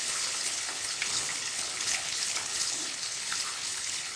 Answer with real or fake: fake